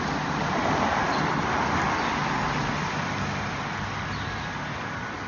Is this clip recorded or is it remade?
recorded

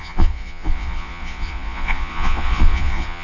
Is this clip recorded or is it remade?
remade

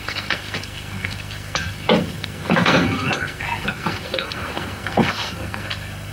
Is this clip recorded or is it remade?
remade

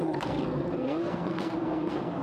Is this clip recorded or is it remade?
remade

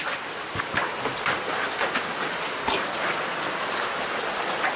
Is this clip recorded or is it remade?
recorded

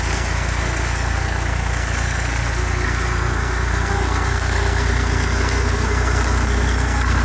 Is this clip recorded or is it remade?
remade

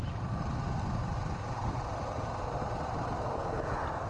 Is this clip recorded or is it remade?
remade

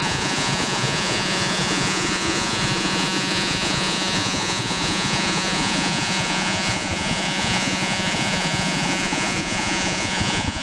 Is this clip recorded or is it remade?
remade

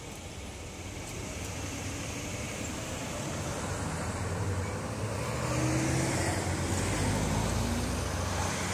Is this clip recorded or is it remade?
recorded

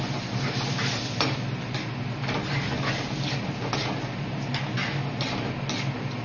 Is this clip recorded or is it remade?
recorded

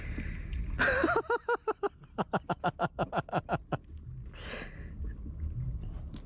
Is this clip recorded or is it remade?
recorded